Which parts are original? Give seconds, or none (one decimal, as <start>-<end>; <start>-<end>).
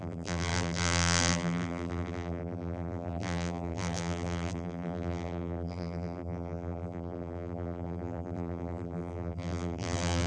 none